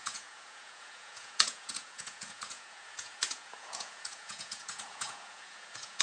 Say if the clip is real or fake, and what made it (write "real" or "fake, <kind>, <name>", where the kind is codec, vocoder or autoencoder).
fake, vocoder, Vocos